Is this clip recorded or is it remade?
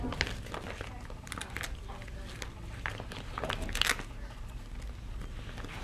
recorded